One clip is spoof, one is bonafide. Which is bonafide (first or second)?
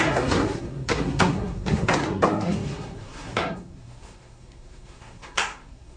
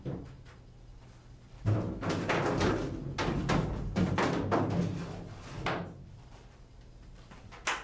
second